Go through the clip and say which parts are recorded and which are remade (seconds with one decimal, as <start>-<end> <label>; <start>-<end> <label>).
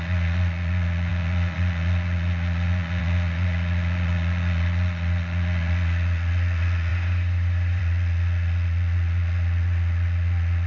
0.0-6.9 remade; 6.9-7.8 recorded; 7.8-10.7 remade